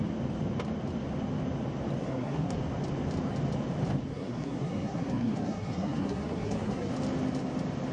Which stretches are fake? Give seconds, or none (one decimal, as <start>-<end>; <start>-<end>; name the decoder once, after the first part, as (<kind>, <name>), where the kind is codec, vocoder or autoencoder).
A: 2.0-2.6 (codec, SNAC); 4.1-6.9